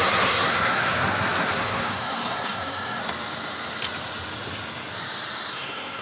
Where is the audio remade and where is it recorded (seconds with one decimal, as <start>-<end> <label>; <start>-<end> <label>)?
0.0-3.0 remade; 3.0-5.5 recorded; 5.5-6.0 remade